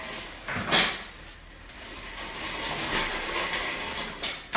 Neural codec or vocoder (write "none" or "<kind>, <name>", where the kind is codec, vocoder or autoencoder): none